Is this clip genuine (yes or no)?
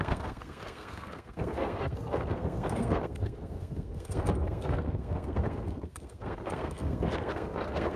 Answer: no